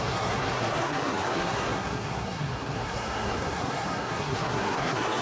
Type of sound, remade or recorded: remade